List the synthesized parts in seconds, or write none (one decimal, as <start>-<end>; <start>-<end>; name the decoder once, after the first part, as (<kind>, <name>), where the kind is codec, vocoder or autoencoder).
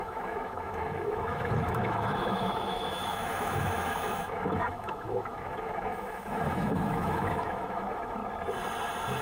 0.0-8.2 (autoencoder, DAC-VAE)